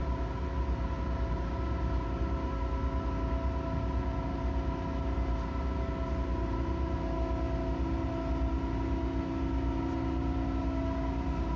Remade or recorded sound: recorded